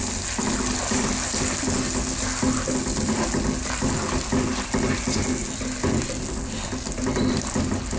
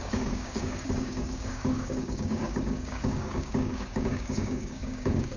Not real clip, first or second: second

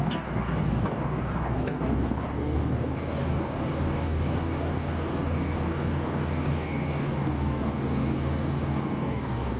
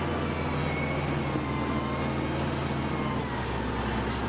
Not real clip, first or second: first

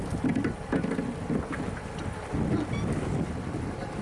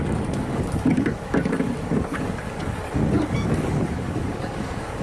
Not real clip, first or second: second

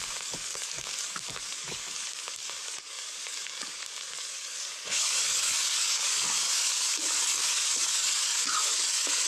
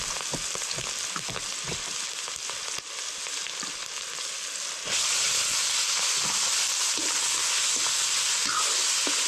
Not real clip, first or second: first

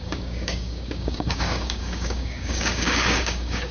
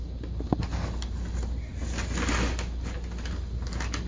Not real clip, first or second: first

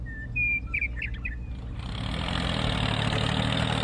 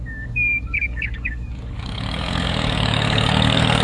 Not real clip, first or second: second